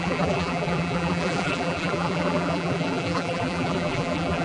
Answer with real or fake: fake